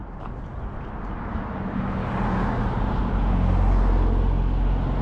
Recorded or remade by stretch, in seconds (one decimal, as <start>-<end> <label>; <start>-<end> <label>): 0.0-0.8 remade; 0.8-5.0 recorded